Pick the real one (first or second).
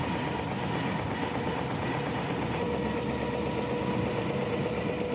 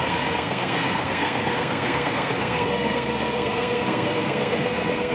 first